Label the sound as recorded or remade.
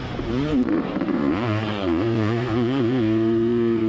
remade